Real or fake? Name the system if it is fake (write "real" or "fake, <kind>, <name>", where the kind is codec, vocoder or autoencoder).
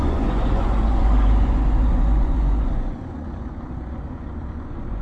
fake, vocoder, Vocos